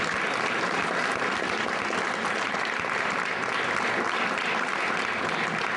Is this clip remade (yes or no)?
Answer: no